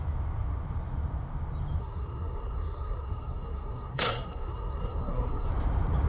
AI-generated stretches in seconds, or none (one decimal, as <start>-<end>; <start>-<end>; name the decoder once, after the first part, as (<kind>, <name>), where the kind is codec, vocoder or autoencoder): 1.8-5.5 (codec, SNAC)